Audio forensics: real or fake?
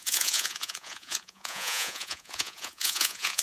fake